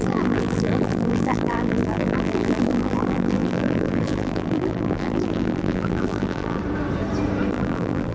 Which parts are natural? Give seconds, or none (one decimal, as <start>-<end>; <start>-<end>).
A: 6.6-7.5